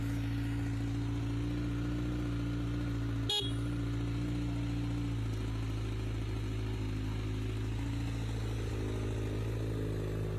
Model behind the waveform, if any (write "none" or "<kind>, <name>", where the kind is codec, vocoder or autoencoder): none